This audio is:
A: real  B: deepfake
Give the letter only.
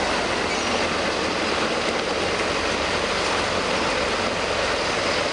A